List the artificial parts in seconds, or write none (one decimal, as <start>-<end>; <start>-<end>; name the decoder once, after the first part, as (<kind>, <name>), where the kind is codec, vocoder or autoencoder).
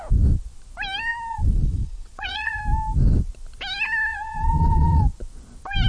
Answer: 1.3-2.6 (vocoder, Vocos); 4.1-5.0